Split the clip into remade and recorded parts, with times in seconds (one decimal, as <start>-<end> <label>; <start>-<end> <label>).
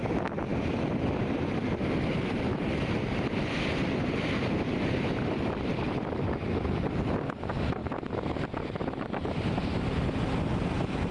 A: 0.0-0.5 recorded; 0.5-2.8 remade; 2.8-5.1 recorded; 5.1-6.5 remade; 6.5-7.8 recorded; 7.8-9.0 remade; 9.0-11.1 recorded